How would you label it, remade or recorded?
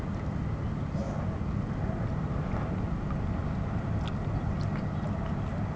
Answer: recorded